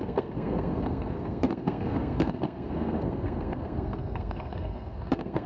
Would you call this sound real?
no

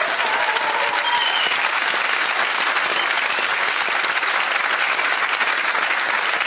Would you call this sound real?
yes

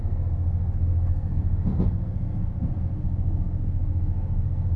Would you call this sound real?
no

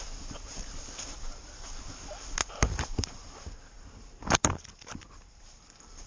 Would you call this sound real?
yes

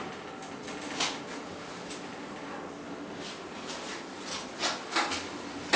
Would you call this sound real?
yes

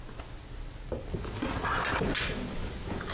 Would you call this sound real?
yes